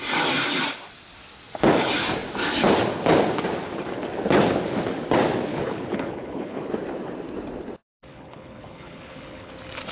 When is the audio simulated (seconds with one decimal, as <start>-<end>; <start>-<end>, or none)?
5.5-6.7; 8.1-9.5